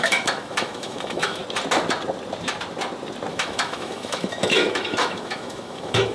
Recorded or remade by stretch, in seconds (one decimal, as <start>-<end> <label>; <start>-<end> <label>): 0.0-1.4 remade; 1.4-3.3 recorded; 3.3-6.1 remade